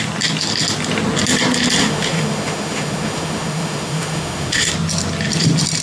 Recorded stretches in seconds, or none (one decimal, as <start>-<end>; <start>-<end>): 0.0-1.8; 4.7-5.8